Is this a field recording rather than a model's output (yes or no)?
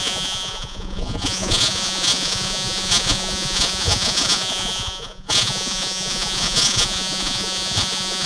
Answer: no